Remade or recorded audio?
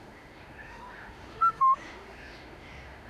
remade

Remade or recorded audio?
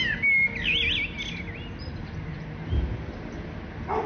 recorded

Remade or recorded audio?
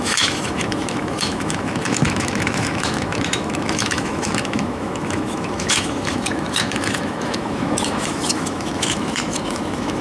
remade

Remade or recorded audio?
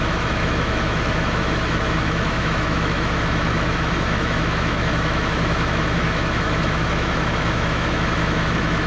remade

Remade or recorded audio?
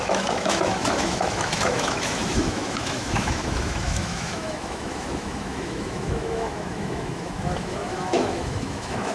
remade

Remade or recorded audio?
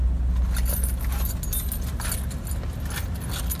recorded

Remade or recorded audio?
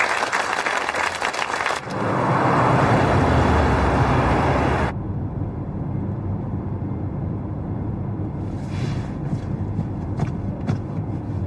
recorded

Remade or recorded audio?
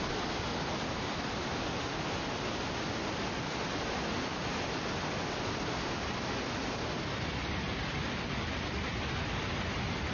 recorded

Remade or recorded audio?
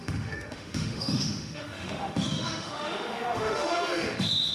remade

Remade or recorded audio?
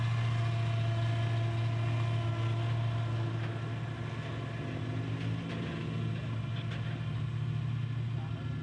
recorded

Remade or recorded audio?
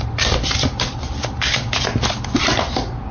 recorded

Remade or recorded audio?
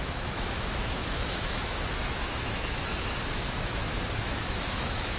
remade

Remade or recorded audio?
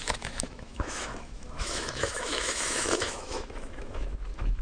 remade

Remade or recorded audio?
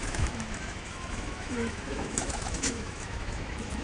remade